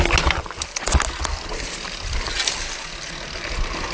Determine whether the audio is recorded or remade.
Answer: recorded